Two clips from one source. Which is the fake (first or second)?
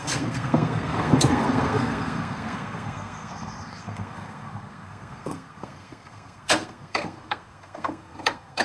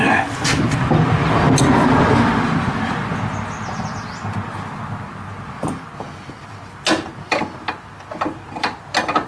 first